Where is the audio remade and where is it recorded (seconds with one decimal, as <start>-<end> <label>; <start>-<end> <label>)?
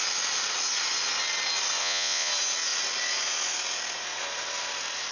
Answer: 0.0-1.8 recorded; 1.8-2.3 remade; 2.3-5.1 recorded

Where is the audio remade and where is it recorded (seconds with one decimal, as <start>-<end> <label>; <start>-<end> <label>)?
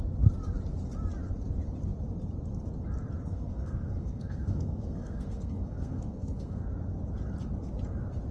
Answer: 0.0-3.2 recorded; 3.2-6.6 remade; 6.6-8.3 recorded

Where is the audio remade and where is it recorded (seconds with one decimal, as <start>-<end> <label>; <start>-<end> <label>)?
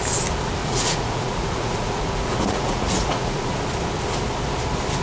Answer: 0.0-0.6 recorded; 0.6-3.6 remade; 3.6-5.0 recorded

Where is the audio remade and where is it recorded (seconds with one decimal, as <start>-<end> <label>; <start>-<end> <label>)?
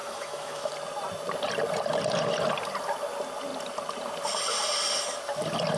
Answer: 0.0-0.7 remade; 0.7-5.8 recorded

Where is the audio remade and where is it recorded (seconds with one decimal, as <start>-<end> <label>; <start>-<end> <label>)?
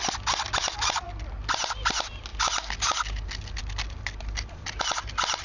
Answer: 0.0-5.4 recorded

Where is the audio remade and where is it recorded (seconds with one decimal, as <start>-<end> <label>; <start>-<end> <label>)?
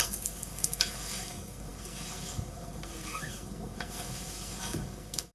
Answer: 0.0-5.3 remade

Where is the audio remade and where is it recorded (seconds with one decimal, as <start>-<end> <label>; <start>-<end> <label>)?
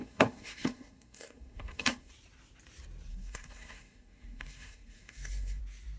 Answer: 0.0-2.1 remade; 2.1-3.1 recorded; 3.1-5.6 remade; 5.6-6.0 recorded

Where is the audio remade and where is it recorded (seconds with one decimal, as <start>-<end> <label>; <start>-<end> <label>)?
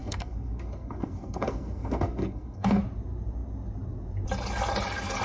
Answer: 0.0-2.8 remade; 2.8-5.2 recorded